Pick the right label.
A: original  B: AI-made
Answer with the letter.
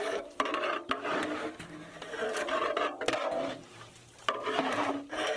B